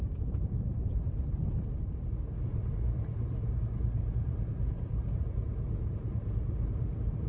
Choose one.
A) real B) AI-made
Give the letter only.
B